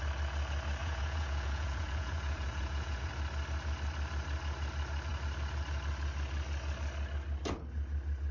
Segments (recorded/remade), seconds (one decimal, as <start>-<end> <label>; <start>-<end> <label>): 0.0-0.8 recorded; 0.8-3.1 remade; 3.1-8.3 recorded